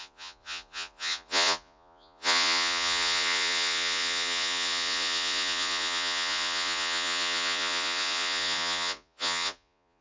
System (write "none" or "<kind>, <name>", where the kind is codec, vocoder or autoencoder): vocoder, Vocos